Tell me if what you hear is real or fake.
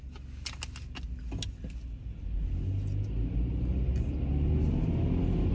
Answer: real